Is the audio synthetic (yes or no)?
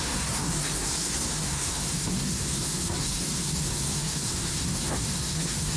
yes